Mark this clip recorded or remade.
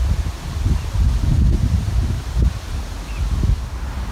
recorded